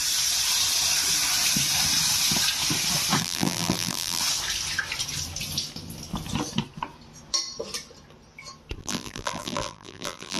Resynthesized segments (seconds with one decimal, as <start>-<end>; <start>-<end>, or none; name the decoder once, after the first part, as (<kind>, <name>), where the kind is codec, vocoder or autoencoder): 3.2-4.2 (vocoder, BigVGAN v2); 8.8-10.4